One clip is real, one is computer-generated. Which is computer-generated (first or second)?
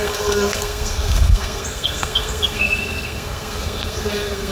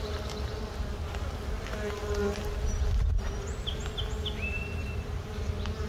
first